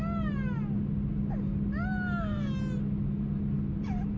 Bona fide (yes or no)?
yes